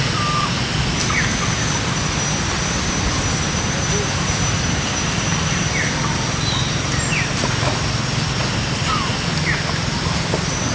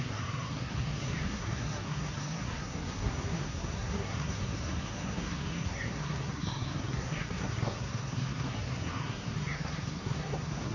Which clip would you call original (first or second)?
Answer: first